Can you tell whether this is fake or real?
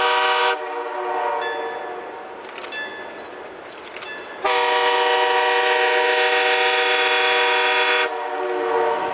real